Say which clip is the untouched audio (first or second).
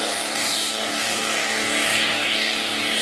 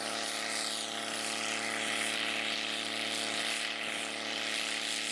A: second